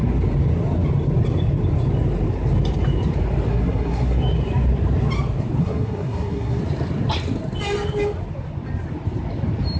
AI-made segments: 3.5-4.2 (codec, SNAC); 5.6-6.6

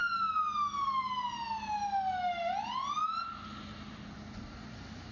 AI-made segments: none